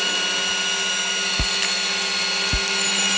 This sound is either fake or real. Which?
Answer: real